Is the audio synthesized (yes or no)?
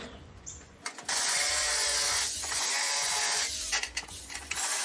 yes